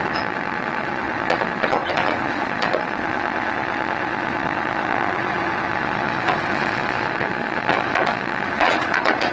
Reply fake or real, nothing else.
fake